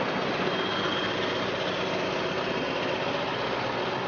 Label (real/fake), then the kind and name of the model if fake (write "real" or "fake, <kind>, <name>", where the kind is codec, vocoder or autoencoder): real